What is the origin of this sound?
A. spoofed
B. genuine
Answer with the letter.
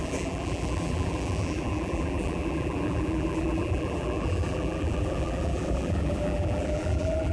A